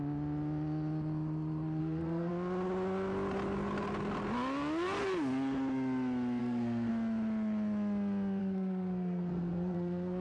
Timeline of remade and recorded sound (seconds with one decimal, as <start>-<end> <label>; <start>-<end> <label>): 0.0-1.8 recorded; 1.8-2.3 remade; 2.3-6.4 recorded; 6.4-6.9 remade; 6.9-8.4 recorded; 8.4-10.2 remade